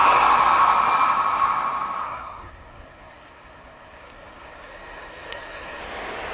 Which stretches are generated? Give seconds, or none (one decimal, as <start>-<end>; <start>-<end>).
2.0-5.8